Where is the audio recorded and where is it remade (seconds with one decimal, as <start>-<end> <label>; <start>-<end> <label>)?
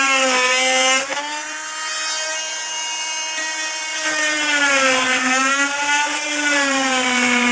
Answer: 0.0-7.5 remade